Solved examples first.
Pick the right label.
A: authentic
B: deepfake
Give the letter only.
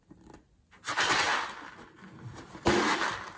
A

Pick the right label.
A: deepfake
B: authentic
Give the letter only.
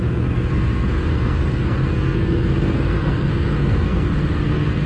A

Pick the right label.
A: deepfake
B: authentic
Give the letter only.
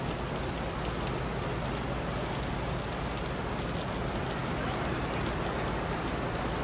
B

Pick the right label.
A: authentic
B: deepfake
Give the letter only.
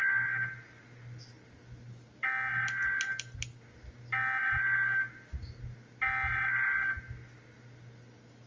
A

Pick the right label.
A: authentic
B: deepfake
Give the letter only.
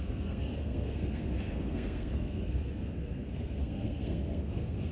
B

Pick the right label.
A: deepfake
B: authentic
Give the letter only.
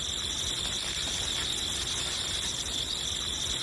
B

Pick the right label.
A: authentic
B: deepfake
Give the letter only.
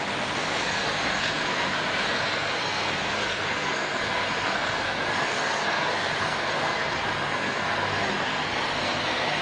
B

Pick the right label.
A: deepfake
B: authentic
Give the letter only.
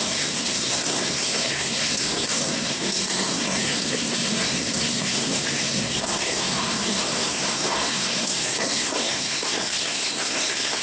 A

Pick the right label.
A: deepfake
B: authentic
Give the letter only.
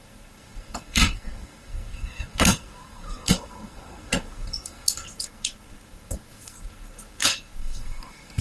A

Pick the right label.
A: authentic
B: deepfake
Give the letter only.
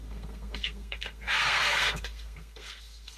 B